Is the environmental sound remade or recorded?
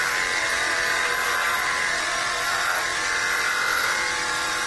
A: recorded